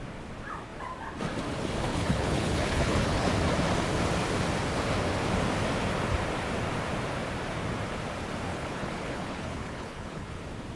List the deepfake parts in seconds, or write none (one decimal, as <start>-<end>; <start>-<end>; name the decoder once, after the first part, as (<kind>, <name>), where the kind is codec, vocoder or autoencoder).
1.9-3.3 (codec, HILCodec); 8.5-10.4